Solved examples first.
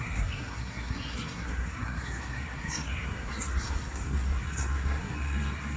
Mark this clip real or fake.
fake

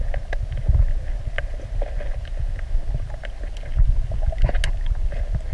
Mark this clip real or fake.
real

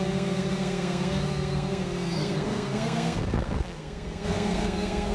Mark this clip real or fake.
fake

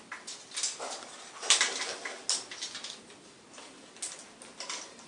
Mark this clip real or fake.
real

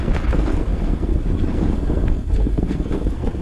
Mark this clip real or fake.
fake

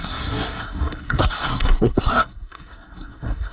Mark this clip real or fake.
fake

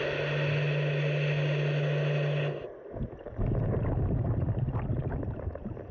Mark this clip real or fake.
real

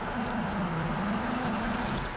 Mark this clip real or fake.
real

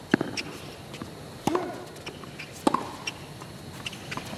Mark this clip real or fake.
real